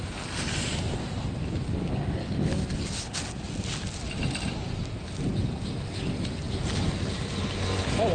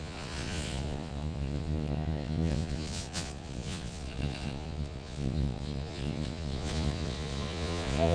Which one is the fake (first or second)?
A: second